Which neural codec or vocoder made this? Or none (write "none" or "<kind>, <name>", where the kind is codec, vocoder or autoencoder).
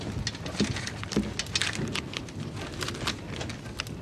none